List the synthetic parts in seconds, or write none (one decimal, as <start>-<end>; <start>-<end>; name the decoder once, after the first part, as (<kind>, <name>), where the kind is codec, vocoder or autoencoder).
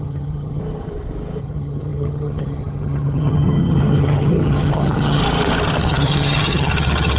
0.0-0.6 (vocoder, HiFi-GAN); 1.4-5.2; 5.8-7.2